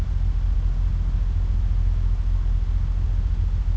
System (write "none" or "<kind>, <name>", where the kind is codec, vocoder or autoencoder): none